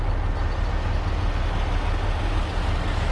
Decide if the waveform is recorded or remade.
recorded